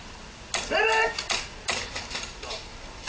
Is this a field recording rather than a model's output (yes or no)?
yes